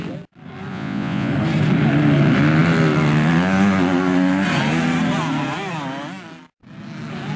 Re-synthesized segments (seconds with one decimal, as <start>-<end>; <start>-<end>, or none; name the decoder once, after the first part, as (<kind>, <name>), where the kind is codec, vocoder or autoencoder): 0.7-1.3 (vocoder, Vocos)